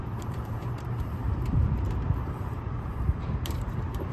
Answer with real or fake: fake